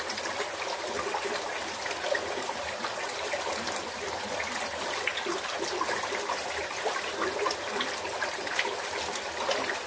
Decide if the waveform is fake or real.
real